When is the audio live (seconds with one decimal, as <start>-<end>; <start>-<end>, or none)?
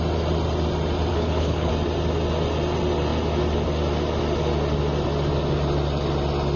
0.0-1.1; 1.7-6.6